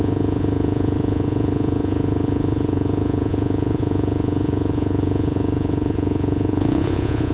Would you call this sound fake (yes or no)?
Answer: yes